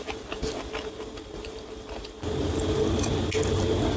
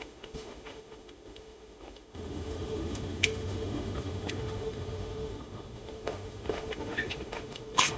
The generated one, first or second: second